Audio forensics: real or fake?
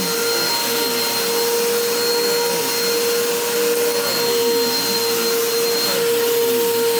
real